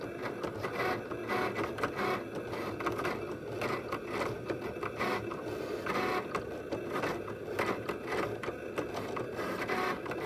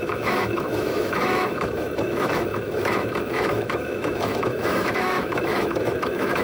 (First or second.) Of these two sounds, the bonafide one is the first